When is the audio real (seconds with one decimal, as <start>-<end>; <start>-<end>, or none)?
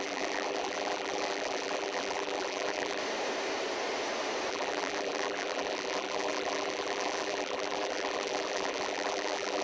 3.0-4.5